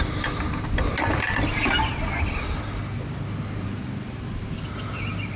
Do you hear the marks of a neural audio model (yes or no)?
no